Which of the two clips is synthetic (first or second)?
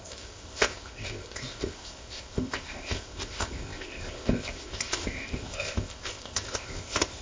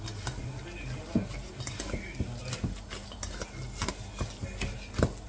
first